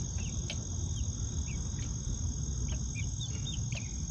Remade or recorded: recorded